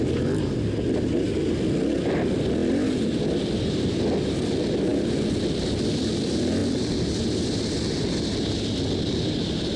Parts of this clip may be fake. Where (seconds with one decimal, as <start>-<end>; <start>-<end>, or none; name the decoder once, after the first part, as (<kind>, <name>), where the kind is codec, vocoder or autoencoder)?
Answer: none

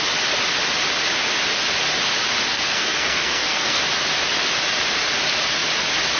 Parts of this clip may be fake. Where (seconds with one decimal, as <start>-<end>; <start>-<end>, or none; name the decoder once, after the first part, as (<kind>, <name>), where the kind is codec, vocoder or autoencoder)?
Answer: 2.5-3.8 (codec, SNAC)

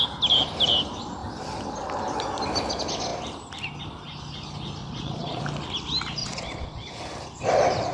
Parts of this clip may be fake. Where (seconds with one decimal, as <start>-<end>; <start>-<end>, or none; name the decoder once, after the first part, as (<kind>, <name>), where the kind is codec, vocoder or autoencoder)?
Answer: 4.8-5.4 (vocoder, Vocos); 6.2-6.9

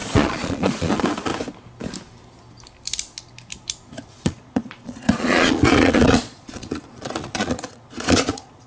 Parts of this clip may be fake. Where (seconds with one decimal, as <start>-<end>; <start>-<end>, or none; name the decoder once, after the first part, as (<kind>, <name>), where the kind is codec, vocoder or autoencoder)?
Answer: 0.0-1.3 (vocoder, Vocos); 4.1-8.7

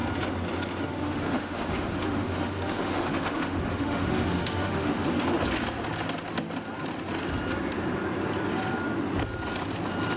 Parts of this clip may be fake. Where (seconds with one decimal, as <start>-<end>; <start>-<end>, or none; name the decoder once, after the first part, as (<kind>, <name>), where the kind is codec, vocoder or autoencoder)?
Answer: 1.0-5.0 (autoencoder, DAC-VAE)

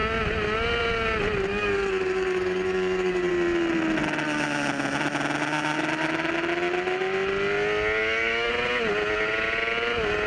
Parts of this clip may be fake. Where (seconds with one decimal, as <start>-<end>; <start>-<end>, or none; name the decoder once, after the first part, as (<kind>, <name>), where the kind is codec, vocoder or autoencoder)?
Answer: 1.5-3.3 (codec, DAC); 8.0-8.5

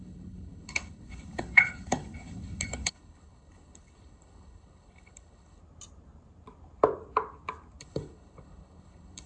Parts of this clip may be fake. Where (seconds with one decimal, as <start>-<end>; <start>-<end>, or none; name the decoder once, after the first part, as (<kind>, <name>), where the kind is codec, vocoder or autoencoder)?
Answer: 0.0-5.6 (codec, HILCodec); 7.8-9.3

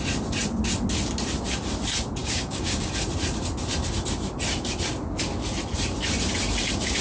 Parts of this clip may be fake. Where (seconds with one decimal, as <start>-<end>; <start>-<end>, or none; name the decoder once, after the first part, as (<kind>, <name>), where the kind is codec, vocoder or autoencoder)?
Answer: 2.2-2.9 (codec, DAC)